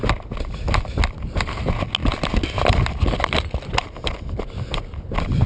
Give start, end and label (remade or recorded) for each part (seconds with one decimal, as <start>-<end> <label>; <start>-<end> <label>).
0.0-5.5 recorded